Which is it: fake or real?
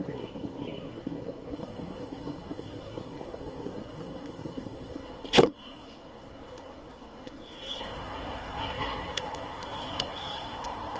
fake